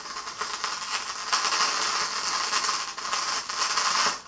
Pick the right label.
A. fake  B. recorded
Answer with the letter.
B